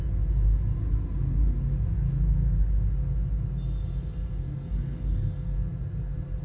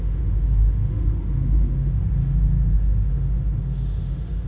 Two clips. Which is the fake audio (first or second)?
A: second